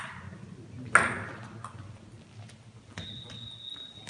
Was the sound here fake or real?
real